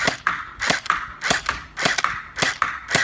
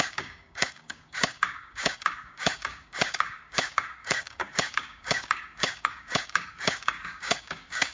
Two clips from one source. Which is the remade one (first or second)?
second